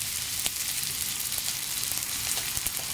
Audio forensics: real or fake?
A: fake